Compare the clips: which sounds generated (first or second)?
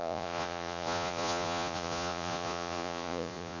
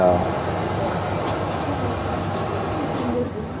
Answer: first